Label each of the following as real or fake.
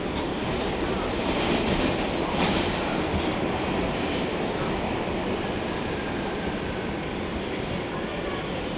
real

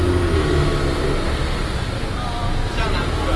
real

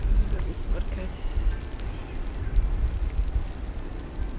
real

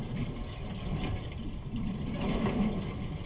real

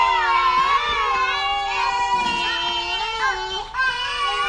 real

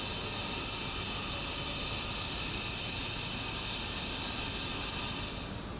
real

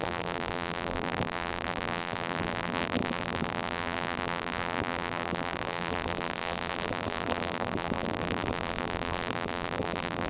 fake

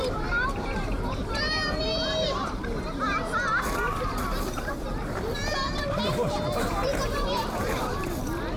fake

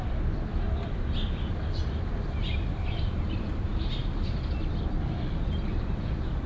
real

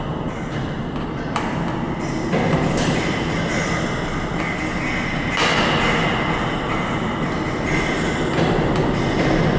real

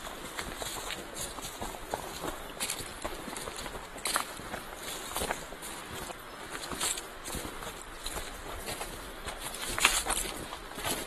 fake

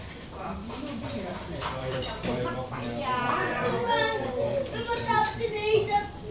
fake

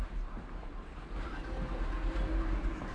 fake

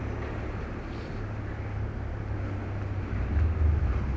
real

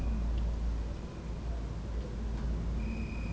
real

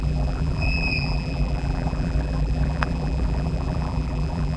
fake